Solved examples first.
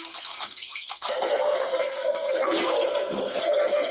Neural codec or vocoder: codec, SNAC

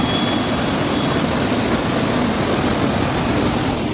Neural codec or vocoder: none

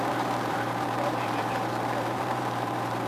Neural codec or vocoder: vocoder, BigVGAN v2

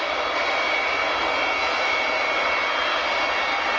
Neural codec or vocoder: none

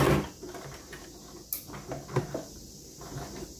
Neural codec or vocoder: none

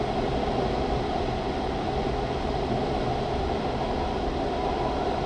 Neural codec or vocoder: none